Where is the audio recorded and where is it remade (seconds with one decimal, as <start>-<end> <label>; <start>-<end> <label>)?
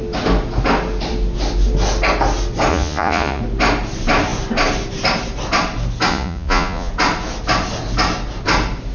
0.0-2.7 recorded; 2.7-3.4 remade; 3.4-6.1 recorded; 6.1-6.9 remade; 6.9-8.9 recorded